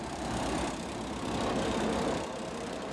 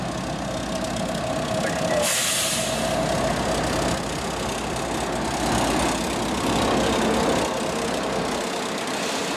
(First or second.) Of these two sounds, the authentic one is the second